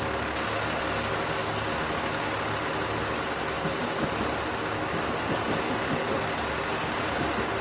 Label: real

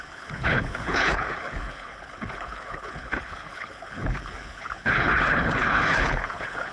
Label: fake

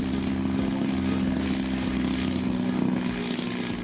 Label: real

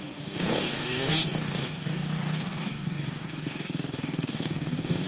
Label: fake